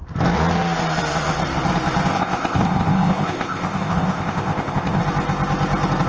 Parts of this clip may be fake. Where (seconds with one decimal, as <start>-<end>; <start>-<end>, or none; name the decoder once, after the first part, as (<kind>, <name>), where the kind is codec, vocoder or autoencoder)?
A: 2.1-5.0 (codec, ZipCodec)